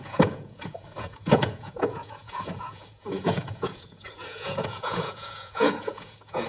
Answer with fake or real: fake